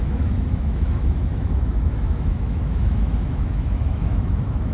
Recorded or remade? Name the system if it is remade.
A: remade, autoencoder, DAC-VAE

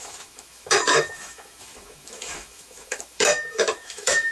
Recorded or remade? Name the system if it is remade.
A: remade, autoencoder, DAC-VAE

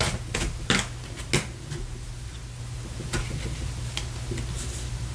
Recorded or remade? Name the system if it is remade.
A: recorded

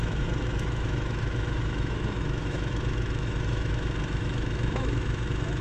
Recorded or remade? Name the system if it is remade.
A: remade, autoencoder, DAC-VAE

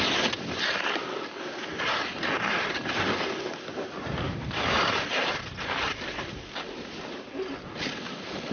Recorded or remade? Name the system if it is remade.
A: recorded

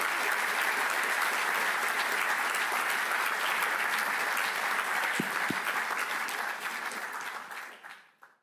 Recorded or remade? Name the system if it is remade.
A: recorded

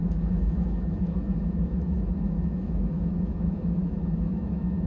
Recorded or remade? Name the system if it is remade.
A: remade, autoencoder, DAC-VAE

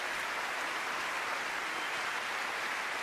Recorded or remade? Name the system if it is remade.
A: recorded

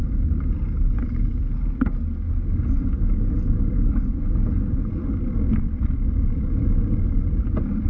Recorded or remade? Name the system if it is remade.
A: recorded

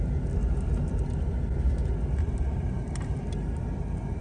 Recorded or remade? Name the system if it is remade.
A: recorded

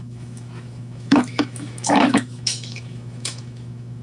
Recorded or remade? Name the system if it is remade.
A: remade, autoencoder, DAC-VAE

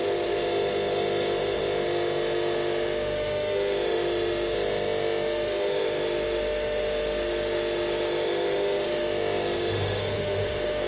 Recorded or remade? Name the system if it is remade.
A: remade, autoencoder, DAC-VAE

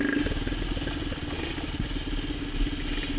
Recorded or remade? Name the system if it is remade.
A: recorded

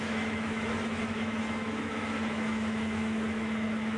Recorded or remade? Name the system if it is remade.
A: remade, autoencoder, DAC-VAE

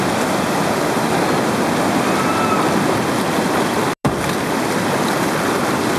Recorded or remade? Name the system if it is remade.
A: recorded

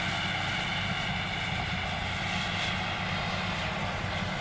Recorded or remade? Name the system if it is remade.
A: recorded